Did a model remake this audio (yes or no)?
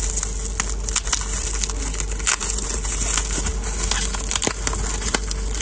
no